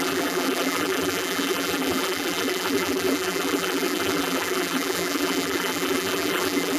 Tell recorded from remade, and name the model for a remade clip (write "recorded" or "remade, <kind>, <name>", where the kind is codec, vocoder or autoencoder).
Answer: remade, vocoder, BigVGAN v2